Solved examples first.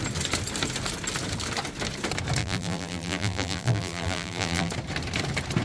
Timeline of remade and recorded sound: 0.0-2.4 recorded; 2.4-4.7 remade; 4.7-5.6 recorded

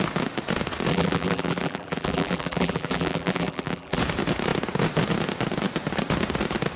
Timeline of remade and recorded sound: 0.0-0.9 recorded; 0.9-4.0 remade; 4.0-6.8 recorded

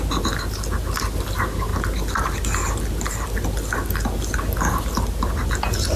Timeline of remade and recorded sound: 0.0-6.0 recorded

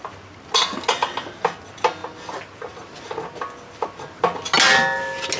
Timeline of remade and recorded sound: 0.0-5.4 recorded

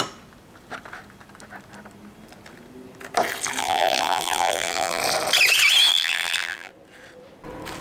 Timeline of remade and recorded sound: 0.0-3.6 recorded; 3.6-5.0 remade; 5.0-5.9 recorded; 5.9-6.7 remade; 6.7-7.8 recorded